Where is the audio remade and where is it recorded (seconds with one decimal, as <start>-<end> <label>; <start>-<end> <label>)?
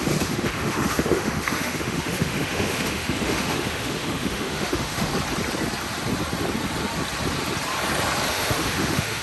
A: 0.0-5.1 remade; 5.1-8.3 recorded; 8.3-9.2 remade